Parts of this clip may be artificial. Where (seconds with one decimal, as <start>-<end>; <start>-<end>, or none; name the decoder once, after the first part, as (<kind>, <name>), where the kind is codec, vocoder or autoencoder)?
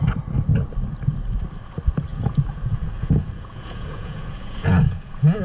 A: 2.1-5.4 (vocoder, Vocos)